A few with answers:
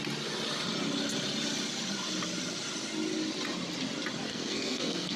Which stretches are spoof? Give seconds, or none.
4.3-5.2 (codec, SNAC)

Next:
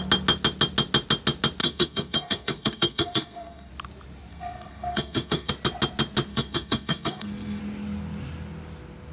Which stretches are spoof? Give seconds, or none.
1.6-3.7 (codec, SNAC); 4.3-5.5; 6.3-7.6

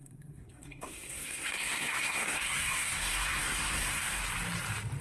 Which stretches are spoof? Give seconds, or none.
0.0-4.2 (codec, SNAC)

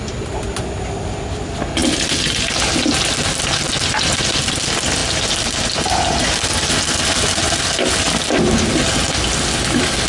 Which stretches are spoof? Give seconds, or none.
none